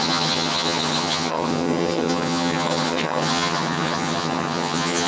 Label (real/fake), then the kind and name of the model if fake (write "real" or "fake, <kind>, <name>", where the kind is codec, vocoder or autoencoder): fake, vocoder, HiFi-GAN